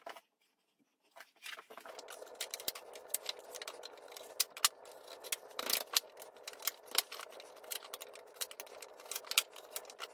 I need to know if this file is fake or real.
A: real